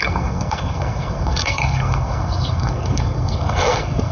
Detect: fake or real fake